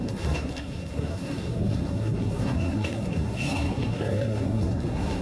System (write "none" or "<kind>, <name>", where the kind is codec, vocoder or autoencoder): codec, SNAC